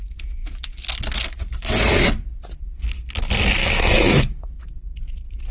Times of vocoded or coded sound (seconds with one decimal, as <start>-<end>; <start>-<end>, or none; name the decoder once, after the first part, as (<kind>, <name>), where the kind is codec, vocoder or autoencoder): 3.6-4.6 (autoencoder, DAC-VAE)

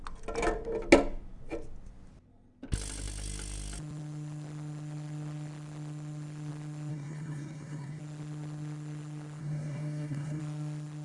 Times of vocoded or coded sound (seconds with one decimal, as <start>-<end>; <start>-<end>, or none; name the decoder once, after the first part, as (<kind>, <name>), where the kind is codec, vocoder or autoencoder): 6.9-8.0 (codec, SNAC); 9.4-10.4

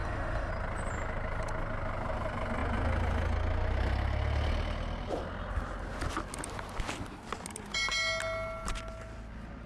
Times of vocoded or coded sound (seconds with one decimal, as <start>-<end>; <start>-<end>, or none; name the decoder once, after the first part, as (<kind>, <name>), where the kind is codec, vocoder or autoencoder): 0.0-0.5 (autoencoder, DAC-VAE)

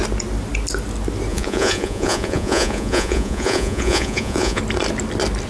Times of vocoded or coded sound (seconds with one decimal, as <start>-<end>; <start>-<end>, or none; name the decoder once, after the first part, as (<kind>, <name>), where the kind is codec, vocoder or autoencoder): 1.3-4.6 (vocoder, Vocos)

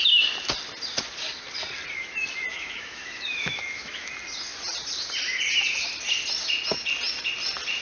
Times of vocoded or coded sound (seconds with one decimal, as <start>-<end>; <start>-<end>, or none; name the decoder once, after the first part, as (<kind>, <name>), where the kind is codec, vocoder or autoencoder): 2.5-4.1 (autoencoder, DAC-VAE)

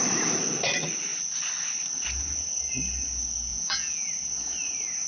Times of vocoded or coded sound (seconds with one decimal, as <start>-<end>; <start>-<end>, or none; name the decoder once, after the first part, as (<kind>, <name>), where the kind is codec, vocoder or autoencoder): 3.5-4.1 (vocoder, Vocos)